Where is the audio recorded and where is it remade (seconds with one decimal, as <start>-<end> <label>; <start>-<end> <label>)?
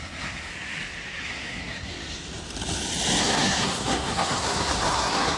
0.0-0.5 remade; 0.5-1.2 recorded; 1.2-1.9 remade; 1.9-3.2 recorded; 3.2-5.4 remade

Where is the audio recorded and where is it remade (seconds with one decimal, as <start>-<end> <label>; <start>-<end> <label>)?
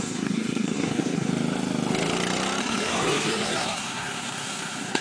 0.0-1.3 remade; 1.3-2.6 recorded; 2.6-5.0 remade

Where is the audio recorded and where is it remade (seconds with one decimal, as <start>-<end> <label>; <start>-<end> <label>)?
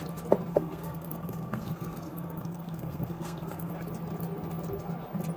0.0-0.5 recorded; 0.5-3.7 remade; 3.7-5.4 recorded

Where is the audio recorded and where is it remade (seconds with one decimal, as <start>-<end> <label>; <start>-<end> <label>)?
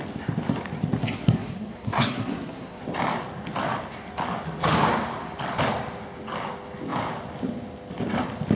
0.0-1.0 recorded; 1.0-2.8 remade; 2.8-8.5 recorded